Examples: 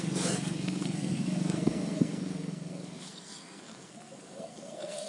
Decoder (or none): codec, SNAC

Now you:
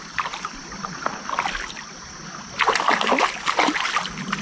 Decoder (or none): none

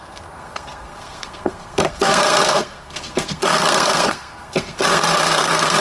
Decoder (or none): codec, SNAC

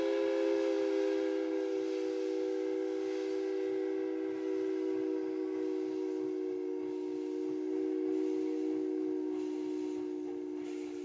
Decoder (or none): none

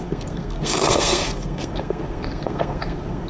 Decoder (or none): codec, SNAC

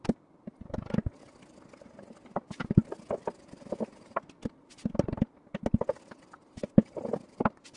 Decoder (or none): none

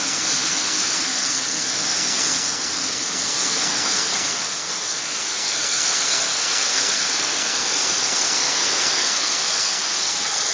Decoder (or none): codec, SNAC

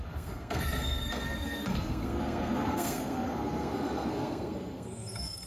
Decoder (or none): codec, SNAC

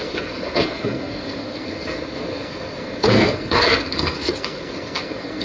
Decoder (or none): codec, SNAC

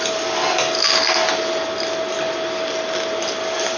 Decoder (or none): none